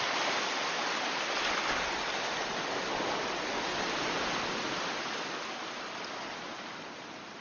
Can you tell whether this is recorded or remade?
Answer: recorded